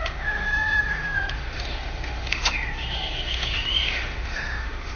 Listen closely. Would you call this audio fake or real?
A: fake